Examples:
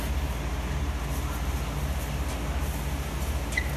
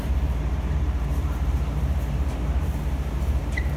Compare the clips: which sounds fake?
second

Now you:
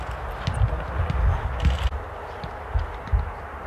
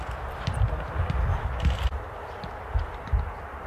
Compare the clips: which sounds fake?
second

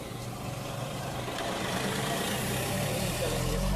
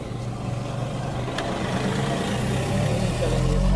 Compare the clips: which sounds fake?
first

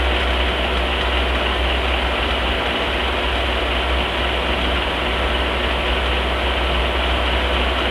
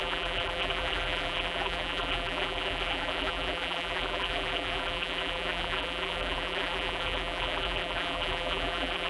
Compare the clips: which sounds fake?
second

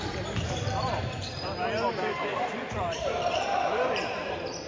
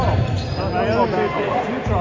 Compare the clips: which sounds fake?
first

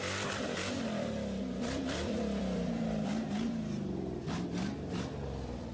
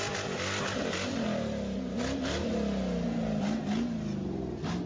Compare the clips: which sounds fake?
first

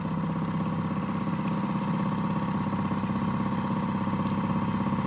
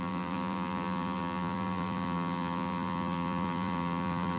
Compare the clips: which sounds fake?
second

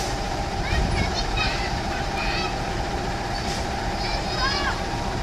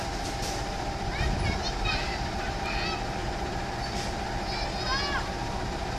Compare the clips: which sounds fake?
first